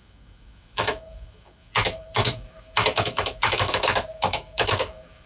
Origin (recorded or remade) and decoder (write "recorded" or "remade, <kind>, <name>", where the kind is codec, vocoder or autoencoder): remade, autoencoder, DAC-VAE